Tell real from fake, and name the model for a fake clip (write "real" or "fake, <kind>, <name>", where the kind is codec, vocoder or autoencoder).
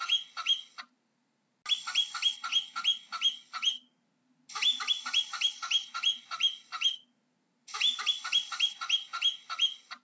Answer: real